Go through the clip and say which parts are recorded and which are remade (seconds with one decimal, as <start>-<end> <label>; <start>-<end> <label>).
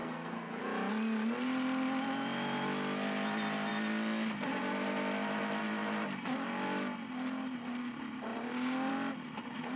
0.0-0.6 remade; 0.6-9.8 recorded